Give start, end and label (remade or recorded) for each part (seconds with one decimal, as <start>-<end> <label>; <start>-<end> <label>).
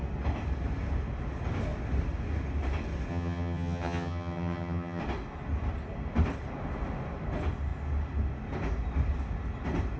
0.0-3.1 recorded; 3.1-5.0 remade; 5.0-10.0 recorded